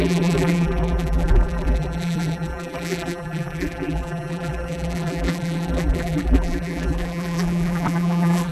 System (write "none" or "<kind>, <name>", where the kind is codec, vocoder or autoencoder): vocoder, BigVGAN v2